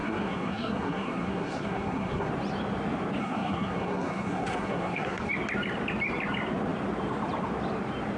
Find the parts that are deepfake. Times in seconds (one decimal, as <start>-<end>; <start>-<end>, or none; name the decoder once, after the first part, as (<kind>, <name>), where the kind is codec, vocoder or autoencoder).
0.0-2.3 (codec, SNAC); 3.2-5.3